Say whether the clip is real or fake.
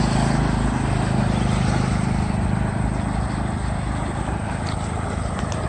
real